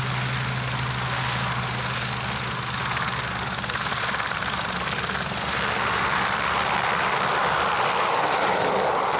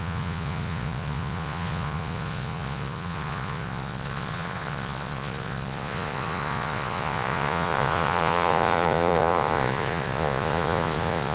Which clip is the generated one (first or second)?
second